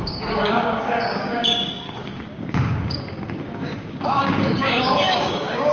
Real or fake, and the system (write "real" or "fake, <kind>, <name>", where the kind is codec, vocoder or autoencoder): fake, codec, DAC